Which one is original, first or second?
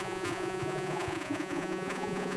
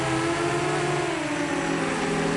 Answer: second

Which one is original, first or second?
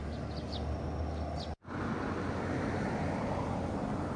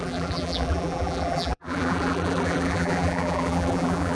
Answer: first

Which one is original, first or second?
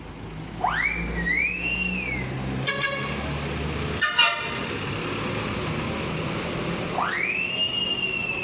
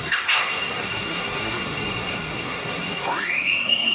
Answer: first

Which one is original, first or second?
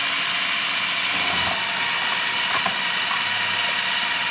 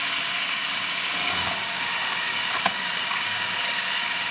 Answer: first